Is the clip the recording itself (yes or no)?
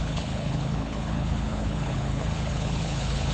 no